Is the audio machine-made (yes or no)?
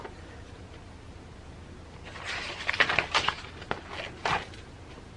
no